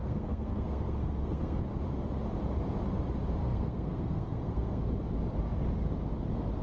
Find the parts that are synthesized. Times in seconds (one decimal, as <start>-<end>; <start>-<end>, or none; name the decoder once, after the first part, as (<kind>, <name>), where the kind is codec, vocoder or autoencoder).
0.0-1.6 (codec, SNAC); 3.4-4.9